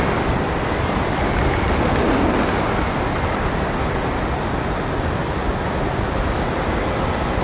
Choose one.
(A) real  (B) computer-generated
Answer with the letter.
A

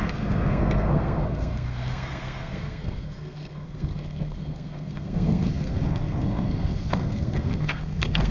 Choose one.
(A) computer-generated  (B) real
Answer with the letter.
A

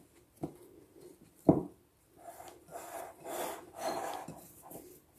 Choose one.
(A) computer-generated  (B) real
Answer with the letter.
B